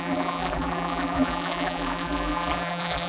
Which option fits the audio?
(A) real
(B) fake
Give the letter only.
B